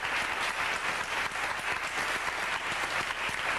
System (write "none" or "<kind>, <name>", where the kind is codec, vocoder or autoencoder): none